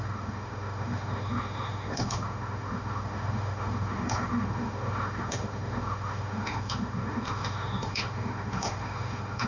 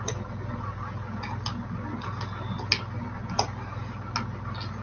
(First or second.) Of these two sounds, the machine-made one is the first